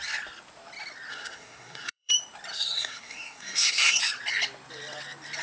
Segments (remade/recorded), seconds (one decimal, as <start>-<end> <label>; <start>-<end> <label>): 0.0-1.1 recorded; 1.1-2.1 remade; 2.1-2.5 recorded; 2.5-4.0 remade; 4.0-5.4 recorded